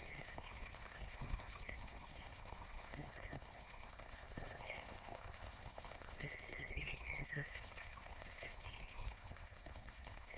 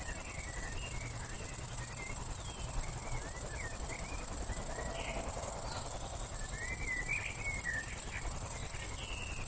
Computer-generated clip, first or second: first